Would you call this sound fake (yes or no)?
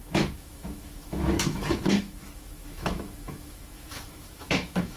yes